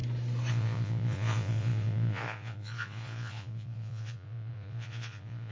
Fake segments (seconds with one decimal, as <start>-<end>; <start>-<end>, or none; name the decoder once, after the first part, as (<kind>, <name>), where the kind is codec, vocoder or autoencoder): 0.5-5.5 (vocoder, Vocos)

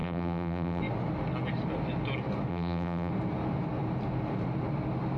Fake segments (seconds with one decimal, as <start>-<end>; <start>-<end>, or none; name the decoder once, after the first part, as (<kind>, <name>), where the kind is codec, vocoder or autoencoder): 0.0-0.8 (vocoder, BigVGAN v2); 2.5-3.1

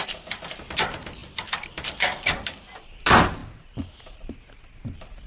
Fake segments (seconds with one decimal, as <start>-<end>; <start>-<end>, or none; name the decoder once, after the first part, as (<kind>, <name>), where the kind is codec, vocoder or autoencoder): none

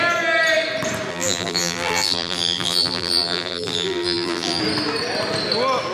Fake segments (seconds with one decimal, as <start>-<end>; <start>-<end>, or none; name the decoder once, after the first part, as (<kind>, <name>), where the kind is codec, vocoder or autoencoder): 1.1-4.6 (vocoder, BigVGAN v2)

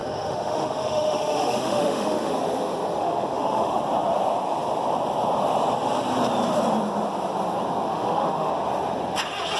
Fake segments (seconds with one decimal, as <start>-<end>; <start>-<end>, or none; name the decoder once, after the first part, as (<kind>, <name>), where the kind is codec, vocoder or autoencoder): 0.0-2.3 (autoencoder, DAC-VAE); 3.0-3.8; 7.9-8.5